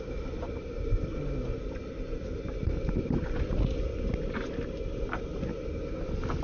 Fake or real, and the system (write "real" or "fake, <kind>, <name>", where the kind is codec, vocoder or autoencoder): real